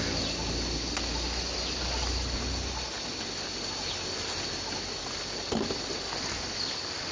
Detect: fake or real real